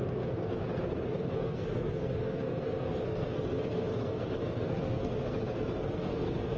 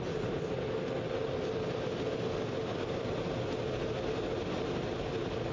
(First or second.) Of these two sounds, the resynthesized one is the first